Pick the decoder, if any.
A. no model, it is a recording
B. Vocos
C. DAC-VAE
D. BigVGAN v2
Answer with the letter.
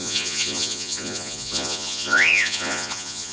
B